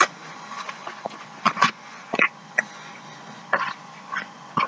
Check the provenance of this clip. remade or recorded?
remade